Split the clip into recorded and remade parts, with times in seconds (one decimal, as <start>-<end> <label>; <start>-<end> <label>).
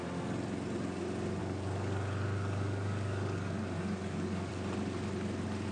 0.0-1.4 recorded; 1.4-4.5 remade; 4.5-5.7 recorded